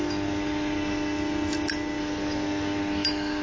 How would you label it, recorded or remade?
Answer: recorded